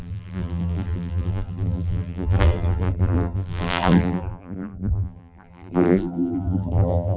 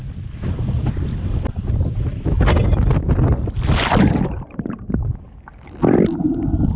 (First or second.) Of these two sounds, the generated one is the first